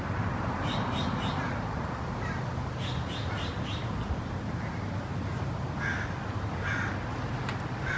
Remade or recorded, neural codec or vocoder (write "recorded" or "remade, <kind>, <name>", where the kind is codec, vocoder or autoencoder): recorded